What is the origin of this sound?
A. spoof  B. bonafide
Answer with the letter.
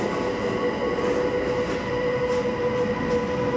B